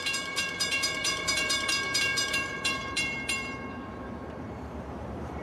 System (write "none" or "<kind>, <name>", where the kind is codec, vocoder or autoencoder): vocoder, BigVGAN v2